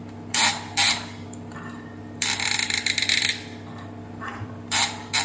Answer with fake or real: fake